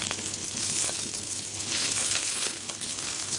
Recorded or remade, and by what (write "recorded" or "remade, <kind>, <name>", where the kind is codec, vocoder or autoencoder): remade, codec, HILCodec